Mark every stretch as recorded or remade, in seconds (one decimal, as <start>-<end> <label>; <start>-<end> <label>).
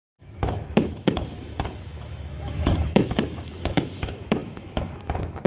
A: 0.0-5.5 remade